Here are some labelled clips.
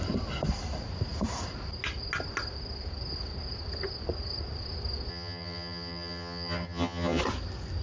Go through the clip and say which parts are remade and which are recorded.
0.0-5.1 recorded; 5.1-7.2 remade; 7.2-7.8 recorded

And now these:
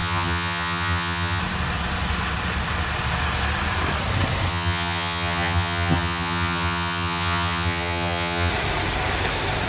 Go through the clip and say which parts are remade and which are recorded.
0.0-1.4 remade; 1.4-4.5 recorded; 4.5-8.5 remade; 8.5-9.7 recorded

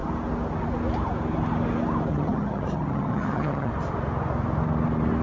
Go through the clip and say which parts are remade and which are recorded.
0.0-2.1 recorded; 2.1-3.7 remade; 3.7-5.2 recorded

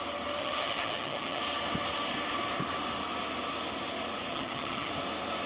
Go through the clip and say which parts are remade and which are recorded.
0.0-0.4 recorded; 0.4-1.4 remade; 1.4-4.3 recorded; 4.3-4.9 remade; 4.9-5.5 recorded

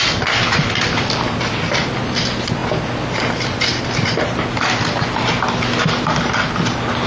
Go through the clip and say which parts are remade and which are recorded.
0.0-7.1 recorded

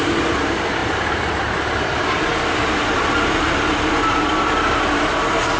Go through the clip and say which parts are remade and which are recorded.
0.0-5.6 recorded